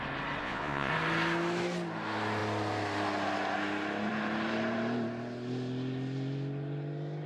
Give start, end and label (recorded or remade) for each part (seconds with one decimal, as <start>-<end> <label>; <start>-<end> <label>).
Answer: 0.0-0.4 recorded; 0.4-0.9 remade; 0.9-7.3 recorded

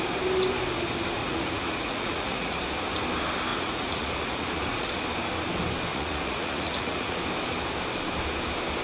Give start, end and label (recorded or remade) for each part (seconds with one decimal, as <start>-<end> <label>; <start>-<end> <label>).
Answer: 0.0-1.2 recorded; 1.2-2.6 remade; 2.6-3.5 recorded; 3.5-4.9 remade; 4.9-5.9 recorded; 5.9-7.2 remade; 7.2-8.8 recorded

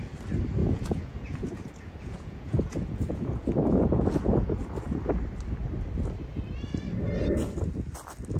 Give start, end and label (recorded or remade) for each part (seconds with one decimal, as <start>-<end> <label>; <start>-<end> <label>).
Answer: 0.0-0.6 recorded; 0.6-5.1 remade; 5.1-8.4 recorded

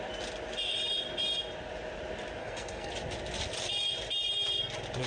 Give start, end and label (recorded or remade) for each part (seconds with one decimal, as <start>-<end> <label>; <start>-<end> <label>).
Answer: 0.0-2.4 recorded; 2.4-2.9 remade; 2.9-5.1 recorded

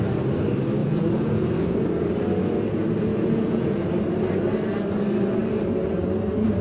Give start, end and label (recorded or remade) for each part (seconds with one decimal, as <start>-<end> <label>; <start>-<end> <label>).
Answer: 0.0-0.8 recorded; 0.8-1.8 remade; 1.8-3.1 recorded; 3.1-3.9 remade; 3.9-6.6 recorded

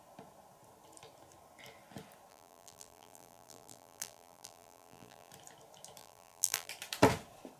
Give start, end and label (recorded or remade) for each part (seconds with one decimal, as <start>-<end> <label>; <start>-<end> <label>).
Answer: 0.0-2.3 recorded; 2.3-5.3 remade; 5.3-6.0 recorded; 6.0-6.7 remade; 6.7-7.6 recorded

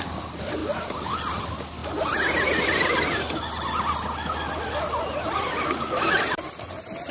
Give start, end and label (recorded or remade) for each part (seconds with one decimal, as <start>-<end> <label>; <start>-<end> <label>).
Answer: 0.0-7.1 remade

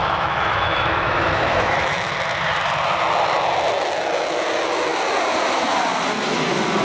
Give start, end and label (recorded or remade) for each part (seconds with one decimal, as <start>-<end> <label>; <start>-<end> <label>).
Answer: 0.0-2.1 remade; 2.1-6.8 recorded